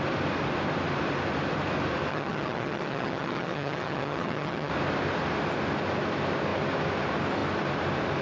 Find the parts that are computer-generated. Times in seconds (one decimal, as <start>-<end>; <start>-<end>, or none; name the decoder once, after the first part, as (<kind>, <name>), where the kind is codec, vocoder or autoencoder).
2.1-4.7 (vocoder, HiFi-GAN)